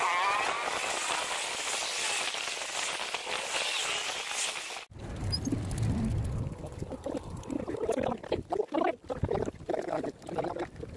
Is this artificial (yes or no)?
no